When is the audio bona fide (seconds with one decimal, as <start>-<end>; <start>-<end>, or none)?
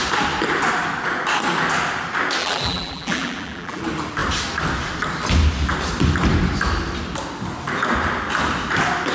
0.0-2.4; 3.8-9.1